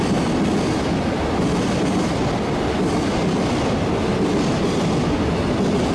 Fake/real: real